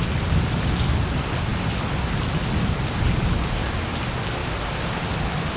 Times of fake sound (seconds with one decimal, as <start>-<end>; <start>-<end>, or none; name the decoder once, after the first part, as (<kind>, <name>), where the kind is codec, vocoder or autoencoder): 4.4-5.1 (vocoder, BigVGAN v2)